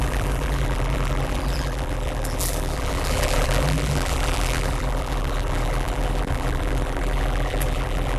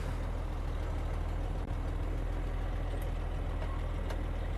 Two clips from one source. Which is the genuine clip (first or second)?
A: second